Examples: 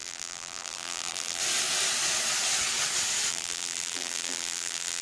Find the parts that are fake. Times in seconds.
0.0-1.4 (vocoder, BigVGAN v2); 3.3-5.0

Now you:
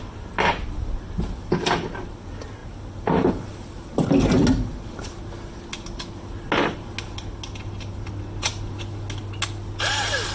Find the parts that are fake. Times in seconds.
none

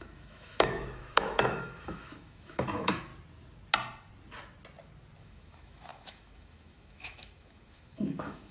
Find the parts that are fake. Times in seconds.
0.0-3.1 (autoencoder, DAC-VAE); 5.2-8.5

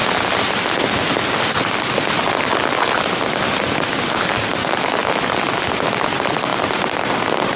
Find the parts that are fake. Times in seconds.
6.5-7.6 (vocoder, BigVGAN v2)

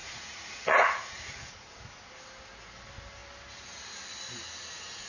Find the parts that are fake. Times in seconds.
0.0-1.5 (vocoder, Vocos)

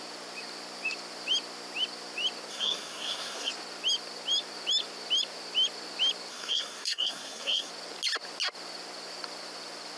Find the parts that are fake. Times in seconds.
2.5-3.5 (codec, SNAC); 6.3-7.7

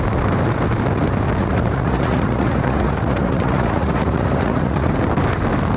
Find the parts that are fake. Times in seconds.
1.4-4.9 (vocoder, Vocos)

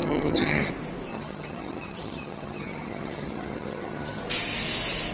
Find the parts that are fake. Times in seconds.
0.0-0.7 (vocoder, HiFi-GAN); 1.1-4.2